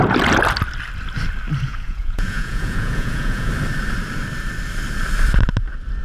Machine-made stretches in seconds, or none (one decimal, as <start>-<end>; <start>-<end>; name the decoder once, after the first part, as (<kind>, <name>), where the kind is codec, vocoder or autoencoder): 1.7-3.5 (vocoder, Vocos)